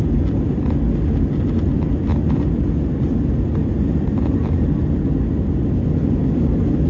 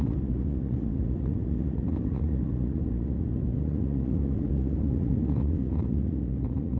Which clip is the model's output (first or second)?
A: second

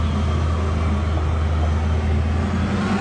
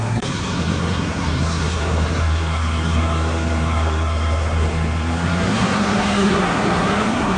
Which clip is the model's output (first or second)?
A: second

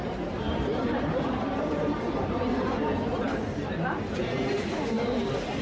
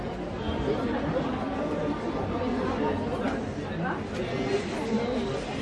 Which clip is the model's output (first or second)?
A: first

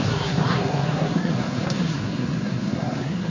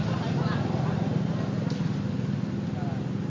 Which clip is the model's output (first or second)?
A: first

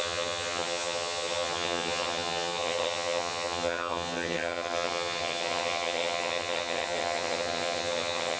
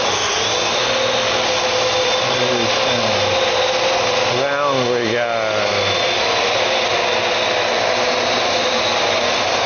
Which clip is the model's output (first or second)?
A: first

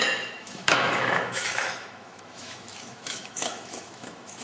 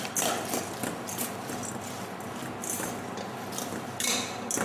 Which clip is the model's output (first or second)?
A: first